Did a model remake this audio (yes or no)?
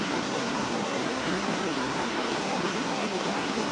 yes